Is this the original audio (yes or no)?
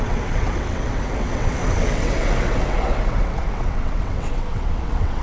no